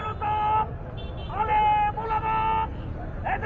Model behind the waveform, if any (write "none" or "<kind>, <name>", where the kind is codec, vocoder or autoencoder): none